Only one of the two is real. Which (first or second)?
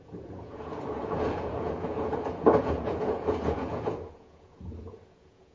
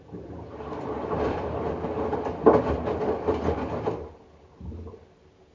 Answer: second